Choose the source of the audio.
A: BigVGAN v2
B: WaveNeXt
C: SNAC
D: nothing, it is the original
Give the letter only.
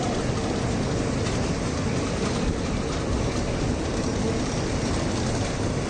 D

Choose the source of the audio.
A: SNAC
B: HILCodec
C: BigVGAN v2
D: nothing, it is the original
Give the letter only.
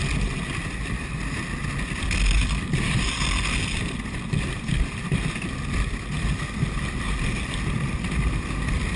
D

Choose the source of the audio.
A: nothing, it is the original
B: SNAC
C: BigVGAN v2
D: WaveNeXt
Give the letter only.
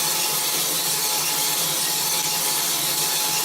A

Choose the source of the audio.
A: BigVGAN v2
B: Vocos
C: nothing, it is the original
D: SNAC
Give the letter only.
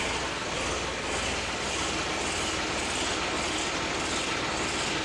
C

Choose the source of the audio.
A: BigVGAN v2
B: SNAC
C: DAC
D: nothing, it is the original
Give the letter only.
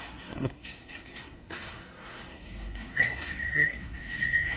B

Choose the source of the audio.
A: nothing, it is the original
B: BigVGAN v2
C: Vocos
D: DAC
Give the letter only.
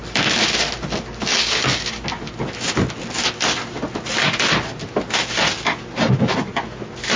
A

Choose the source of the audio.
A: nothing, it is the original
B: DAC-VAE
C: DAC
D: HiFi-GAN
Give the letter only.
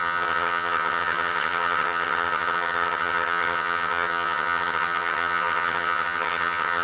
D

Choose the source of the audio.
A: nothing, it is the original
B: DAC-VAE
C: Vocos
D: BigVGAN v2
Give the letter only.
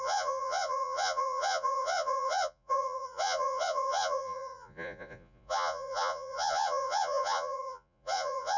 C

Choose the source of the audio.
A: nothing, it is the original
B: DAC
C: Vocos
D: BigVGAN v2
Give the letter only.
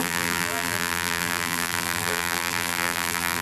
D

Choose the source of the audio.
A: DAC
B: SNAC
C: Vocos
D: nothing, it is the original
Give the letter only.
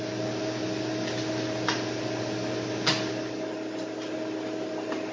D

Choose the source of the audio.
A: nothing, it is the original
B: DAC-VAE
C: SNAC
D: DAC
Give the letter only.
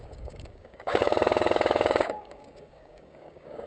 D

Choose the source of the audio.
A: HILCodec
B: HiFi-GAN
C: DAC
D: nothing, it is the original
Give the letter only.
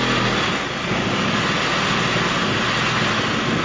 D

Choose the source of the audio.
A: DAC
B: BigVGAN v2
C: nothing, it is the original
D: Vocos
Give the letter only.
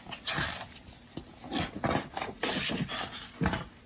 C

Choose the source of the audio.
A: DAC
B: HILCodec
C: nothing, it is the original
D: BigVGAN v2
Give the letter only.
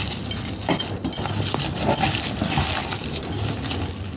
C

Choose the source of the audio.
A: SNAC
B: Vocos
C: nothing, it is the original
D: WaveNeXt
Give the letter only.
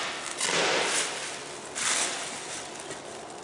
C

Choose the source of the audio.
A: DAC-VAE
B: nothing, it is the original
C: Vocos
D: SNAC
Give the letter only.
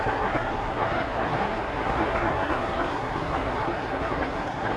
D